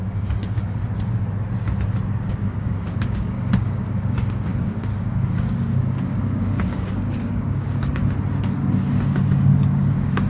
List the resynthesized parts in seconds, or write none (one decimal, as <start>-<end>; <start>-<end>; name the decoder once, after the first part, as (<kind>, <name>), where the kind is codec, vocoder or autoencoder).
0.0-0.8 (codec, DAC); 2.3-8.0; 9.4-10.3